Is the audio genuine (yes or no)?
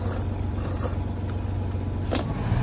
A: yes